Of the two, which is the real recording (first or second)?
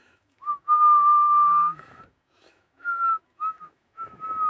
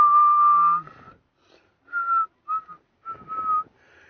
second